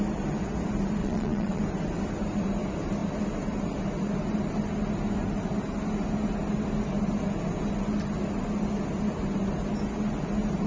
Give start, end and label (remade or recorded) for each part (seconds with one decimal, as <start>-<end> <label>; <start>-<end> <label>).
0.0-1.0 recorded; 1.0-1.6 remade; 1.6-10.7 recorded